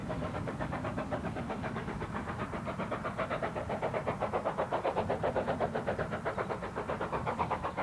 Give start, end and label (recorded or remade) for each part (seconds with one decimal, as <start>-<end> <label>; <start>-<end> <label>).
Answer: 0.0-2.4 remade; 2.4-7.1 recorded; 7.1-7.8 remade